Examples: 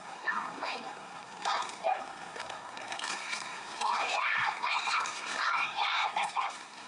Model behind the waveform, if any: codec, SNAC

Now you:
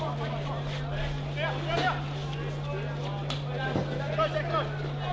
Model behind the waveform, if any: none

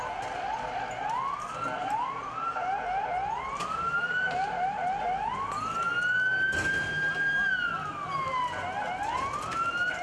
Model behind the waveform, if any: none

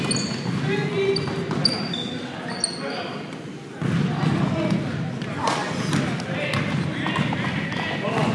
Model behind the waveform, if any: none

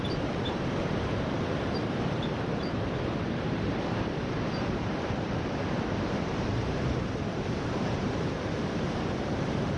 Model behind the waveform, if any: vocoder, BigVGAN v2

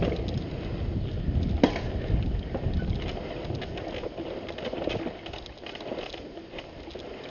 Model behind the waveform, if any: none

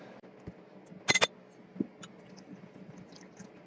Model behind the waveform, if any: none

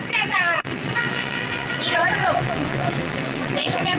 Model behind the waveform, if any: vocoder, WaveNeXt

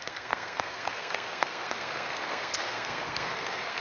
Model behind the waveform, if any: codec, SNAC